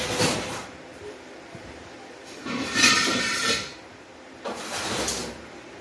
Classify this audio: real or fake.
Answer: fake